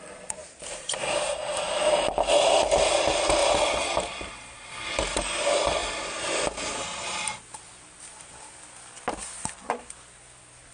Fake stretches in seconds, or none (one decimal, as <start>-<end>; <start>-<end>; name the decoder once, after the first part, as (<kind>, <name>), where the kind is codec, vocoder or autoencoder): none